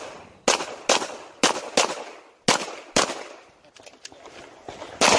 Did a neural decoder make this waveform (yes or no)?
no